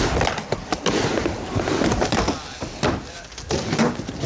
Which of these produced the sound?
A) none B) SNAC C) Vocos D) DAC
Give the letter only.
A